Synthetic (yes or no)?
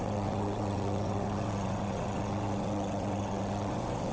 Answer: yes